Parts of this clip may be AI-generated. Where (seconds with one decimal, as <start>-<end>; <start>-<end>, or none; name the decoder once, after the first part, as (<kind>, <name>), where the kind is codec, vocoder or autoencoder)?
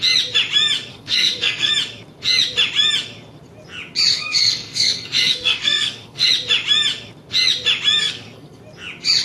0.9-1.7 (codec, SNAC); 4.1-6.3; 8.0-8.6